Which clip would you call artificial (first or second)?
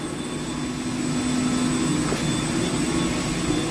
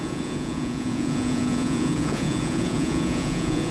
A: second